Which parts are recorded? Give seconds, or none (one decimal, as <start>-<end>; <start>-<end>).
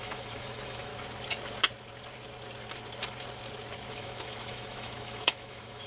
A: 0.9-3.9